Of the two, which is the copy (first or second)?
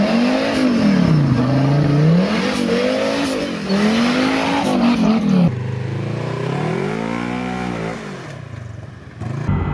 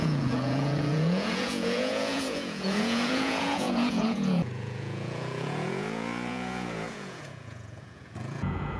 second